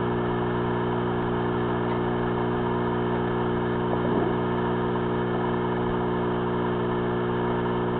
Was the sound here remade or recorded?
recorded